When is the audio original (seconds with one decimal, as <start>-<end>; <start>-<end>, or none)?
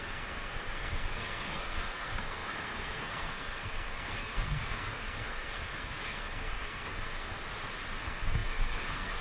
7.4-8.0